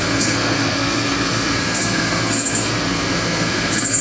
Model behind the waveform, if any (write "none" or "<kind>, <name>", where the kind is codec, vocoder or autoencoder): codec, SNAC